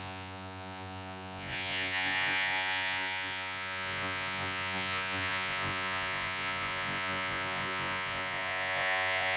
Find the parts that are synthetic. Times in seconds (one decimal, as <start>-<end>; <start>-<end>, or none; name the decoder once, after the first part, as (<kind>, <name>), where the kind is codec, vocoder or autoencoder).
0.0-9.4 (vocoder, Vocos)